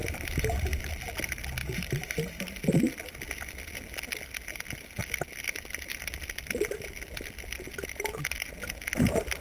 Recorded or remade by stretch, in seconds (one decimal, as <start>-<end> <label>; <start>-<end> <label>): 0.0-0.8 remade; 0.8-1.6 recorded; 1.6-2.6 remade; 2.6-9.4 recorded